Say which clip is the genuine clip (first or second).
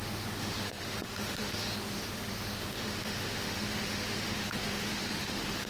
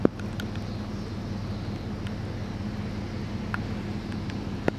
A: second